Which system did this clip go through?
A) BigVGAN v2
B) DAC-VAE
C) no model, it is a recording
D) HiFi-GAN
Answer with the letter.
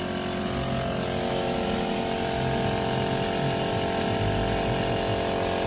C